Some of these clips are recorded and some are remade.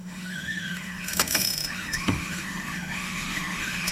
remade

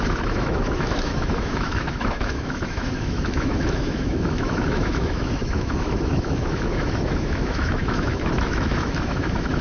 remade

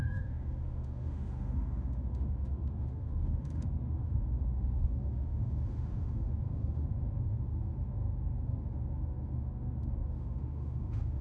remade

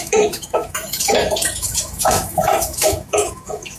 remade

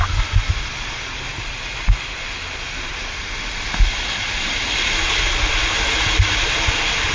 recorded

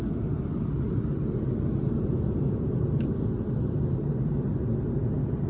recorded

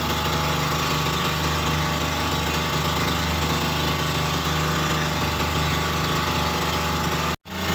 recorded